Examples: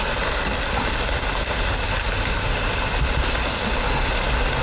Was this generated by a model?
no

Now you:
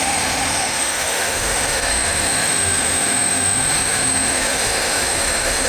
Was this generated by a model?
yes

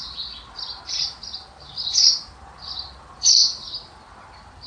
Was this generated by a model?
no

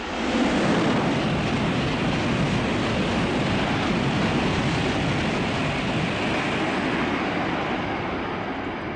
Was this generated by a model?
no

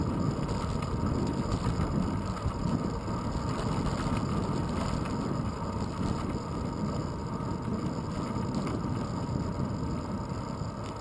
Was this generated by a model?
no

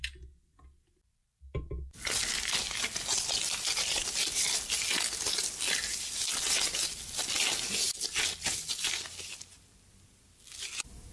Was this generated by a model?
no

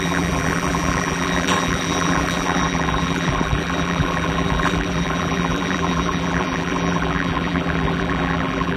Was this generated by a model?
yes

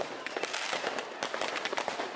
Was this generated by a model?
yes